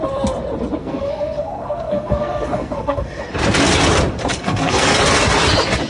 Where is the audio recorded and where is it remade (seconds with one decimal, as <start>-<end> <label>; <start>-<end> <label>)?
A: 0.0-0.8 recorded; 0.8-3.2 remade; 3.2-4.3 recorded; 4.3-4.9 remade; 4.9-5.9 recorded